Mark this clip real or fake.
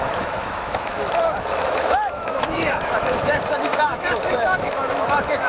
fake